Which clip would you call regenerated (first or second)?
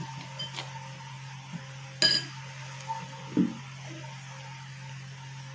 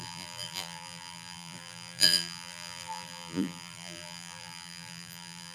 second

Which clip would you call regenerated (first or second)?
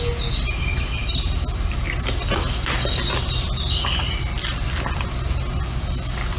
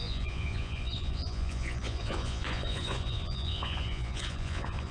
second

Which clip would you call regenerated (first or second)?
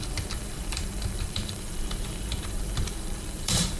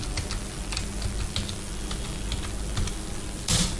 first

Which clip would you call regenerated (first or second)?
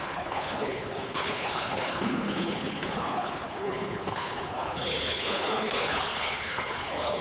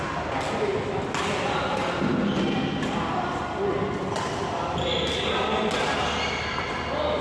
first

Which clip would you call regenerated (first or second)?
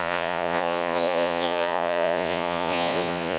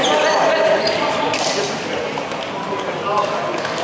first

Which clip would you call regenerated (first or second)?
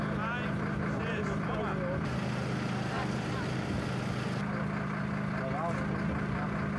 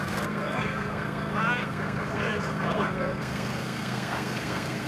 second